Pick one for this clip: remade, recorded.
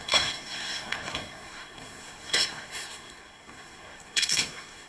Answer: remade